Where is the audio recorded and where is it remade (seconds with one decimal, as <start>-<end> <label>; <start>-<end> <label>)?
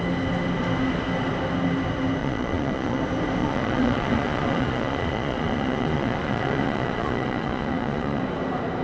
0.0-2.2 recorded; 2.2-3.0 remade; 3.0-3.4 recorded; 3.4-8.2 remade; 8.2-8.8 recorded